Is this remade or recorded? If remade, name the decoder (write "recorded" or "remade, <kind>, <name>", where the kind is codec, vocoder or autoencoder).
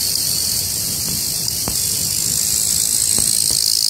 recorded